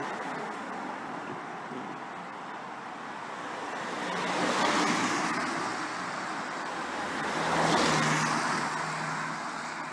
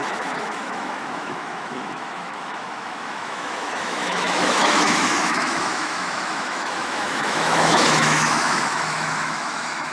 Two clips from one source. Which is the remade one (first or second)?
second